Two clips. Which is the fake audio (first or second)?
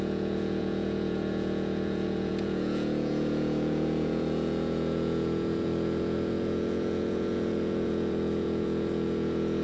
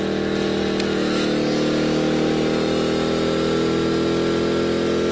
first